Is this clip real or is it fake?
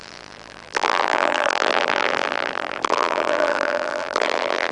fake